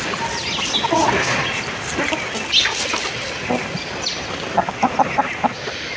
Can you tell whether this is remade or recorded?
recorded